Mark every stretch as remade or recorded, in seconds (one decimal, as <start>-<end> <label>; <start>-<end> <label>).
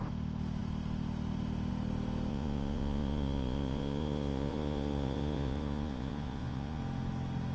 0.0-2.3 recorded; 2.3-6.8 remade; 6.8-7.5 recorded